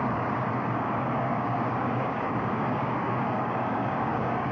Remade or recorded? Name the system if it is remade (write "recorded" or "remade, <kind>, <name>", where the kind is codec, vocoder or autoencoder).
remade, codec, DAC